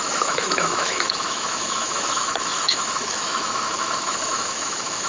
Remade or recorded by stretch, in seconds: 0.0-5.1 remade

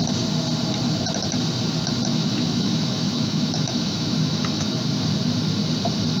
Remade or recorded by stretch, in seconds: 0.0-2.1 recorded; 2.1-4.8 remade; 4.8-6.2 recorded

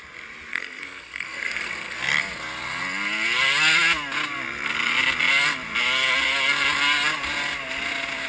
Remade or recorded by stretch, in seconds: 0.0-0.5 recorded; 0.5-2.0 remade; 2.0-8.3 recorded

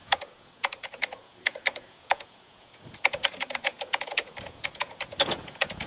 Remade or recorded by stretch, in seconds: 0.0-5.9 remade

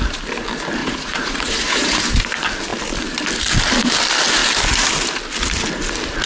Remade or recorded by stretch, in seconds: 0.0-0.8 recorded; 0.8-2.0 remade; 2.0-6.3 recorded

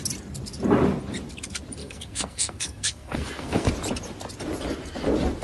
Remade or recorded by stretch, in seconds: 0.0-1.8 recorded; 1.8-3.7 remade; 3.7-5.4 recorded

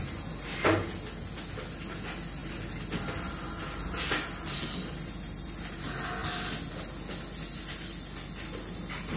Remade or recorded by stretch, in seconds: 0.0-9.2 recorded